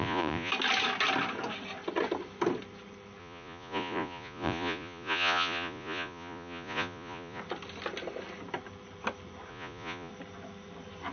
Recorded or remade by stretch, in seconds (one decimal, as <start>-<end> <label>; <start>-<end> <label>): 0.0-0.5 remade; 0.5-3.2 recorded; 3.2-7.4 remade; 7.4-9.5 recorded; 9.5-10.1 remade; 10.1-11.1 recorded